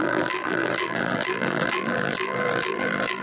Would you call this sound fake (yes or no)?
yes